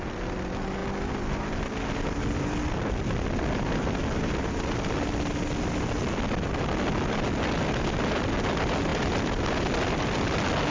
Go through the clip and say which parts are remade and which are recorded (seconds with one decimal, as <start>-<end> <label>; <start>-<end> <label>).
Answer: 0.0-10.7 recorded